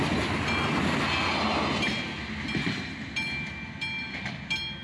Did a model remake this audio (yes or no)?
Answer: no